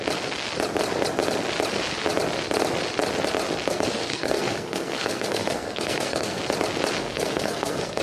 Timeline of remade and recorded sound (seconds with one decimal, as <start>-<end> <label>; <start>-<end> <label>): 0.0-3.7 recorded; 3.7-6.4 remade; 6.4-7.0 recorded; 7.0-8.0 remade